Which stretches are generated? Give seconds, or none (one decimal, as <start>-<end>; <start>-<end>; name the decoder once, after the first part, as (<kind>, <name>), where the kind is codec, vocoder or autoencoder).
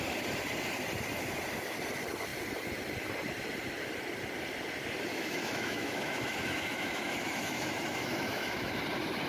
5.1-8.7 (autoencoder, DAC-VAE)